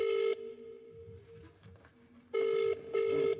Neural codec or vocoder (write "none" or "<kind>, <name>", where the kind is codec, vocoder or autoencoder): none